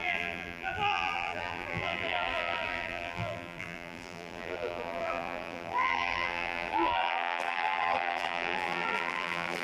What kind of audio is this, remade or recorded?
remade